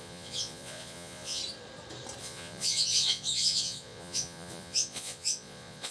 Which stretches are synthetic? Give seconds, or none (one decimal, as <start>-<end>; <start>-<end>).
0.0-1.4; 2.2-5.9